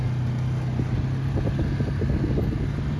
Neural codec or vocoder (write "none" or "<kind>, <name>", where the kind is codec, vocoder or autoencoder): none